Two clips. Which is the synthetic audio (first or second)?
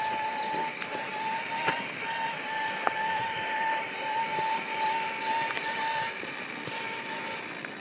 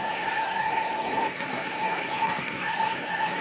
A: second